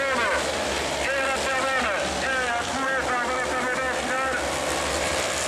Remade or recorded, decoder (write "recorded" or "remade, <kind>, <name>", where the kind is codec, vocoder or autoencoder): recorded